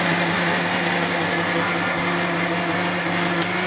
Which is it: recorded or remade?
recorded